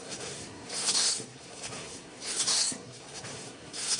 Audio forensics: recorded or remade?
remade